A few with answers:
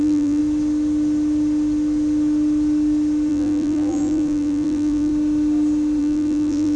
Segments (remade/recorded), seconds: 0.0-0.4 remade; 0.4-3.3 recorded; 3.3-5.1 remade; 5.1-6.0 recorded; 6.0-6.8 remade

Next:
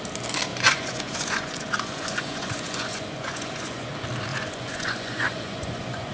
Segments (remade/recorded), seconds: 0.0-0.5 recorded; 0.5-3.9 remade; 3.9-4.3 recorded; 4.3-6.1 remade

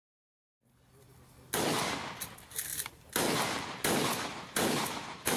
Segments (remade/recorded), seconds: 0.0-2.7 recorded; 2.7-5.4 remade